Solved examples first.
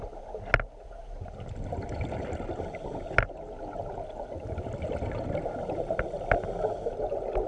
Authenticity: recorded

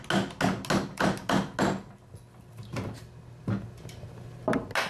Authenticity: recorded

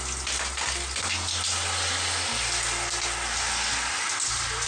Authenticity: recorded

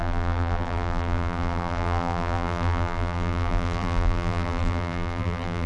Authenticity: remade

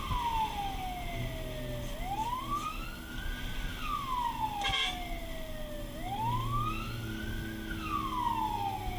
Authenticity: recorded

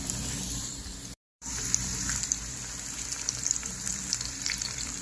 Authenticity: remade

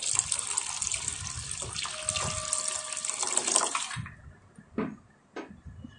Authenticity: recorded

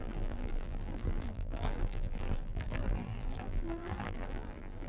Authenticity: remade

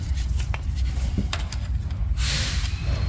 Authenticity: recorded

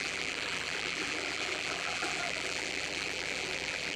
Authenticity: remade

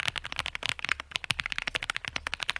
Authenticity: recorded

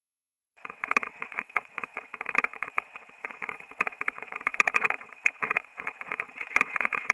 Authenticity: remade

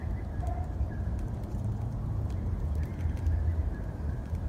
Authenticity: remade